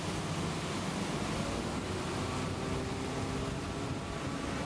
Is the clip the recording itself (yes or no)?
no